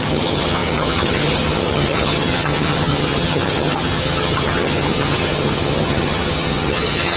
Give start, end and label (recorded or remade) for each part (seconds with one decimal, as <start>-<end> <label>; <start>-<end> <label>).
0.0-7.2 remade